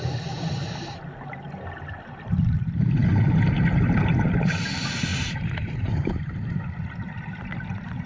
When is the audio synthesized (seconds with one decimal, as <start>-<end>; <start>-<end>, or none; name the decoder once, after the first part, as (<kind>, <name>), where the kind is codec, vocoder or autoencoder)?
5.1-6.2 (vocoder, BigVGAN v2)

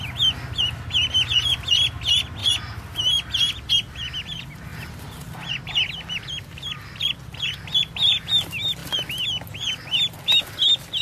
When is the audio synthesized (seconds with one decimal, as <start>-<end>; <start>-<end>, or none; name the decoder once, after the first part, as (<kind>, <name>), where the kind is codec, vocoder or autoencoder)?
4.7-5.7 (vocoder, BigVGAN v2)

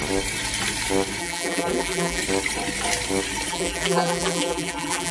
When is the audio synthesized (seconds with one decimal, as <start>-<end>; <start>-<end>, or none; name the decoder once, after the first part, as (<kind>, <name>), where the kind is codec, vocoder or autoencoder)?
1.2-2.2 (vocoder, BigVGAN v2); 3.5-5.1

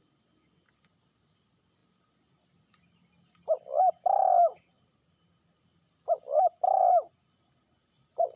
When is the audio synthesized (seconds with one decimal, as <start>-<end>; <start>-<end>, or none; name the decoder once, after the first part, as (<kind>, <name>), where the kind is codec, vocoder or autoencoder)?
0.0-8.4 (vocoder, BigVGAN v2)

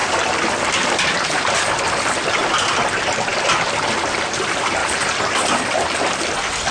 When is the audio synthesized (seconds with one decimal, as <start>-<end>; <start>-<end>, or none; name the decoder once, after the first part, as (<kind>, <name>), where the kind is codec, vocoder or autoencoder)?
0.0-1.8 (vocoder, BigVGAN v2); 2.4-3.1; 4.8-6.7

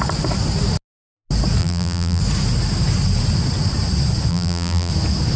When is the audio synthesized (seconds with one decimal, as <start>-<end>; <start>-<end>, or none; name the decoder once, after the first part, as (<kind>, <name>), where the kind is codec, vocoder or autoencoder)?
1.6-2.2 (vocoder, BigVGAN v2); 4.3-4.9